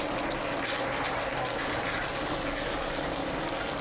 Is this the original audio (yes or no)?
yes